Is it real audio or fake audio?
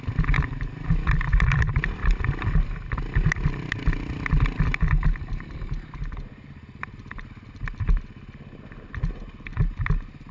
real